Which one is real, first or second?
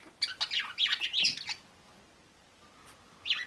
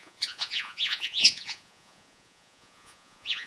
first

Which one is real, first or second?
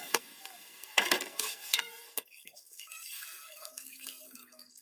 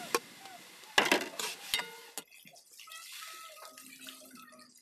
second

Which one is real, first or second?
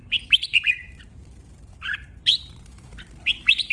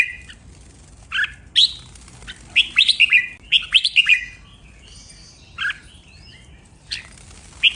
second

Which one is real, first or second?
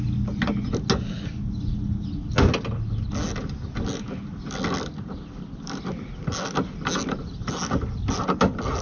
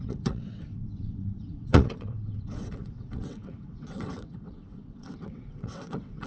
first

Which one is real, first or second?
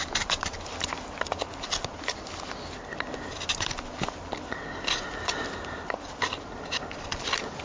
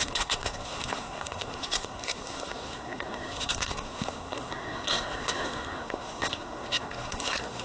first